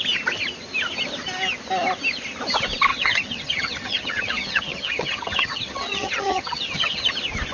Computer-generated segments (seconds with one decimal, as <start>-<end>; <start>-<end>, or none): 2.9-7.1